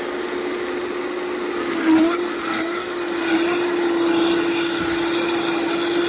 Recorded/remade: recorded